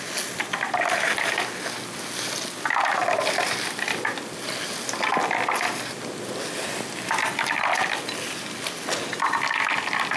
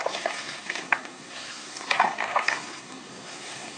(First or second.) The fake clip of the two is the second